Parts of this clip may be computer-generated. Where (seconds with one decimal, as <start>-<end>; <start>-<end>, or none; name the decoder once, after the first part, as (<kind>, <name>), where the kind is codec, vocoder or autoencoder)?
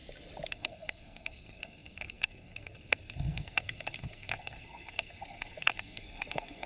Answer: 0.5-6.7 (codec, SNAC)